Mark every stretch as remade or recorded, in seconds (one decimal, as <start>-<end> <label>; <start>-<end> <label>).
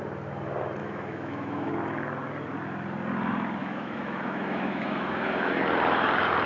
0.0-0.8 recorded; 0.8-1.7 remade; 1.7-3.6 recorded; 3.6-5.6 remade; 5.6-6.5 recorded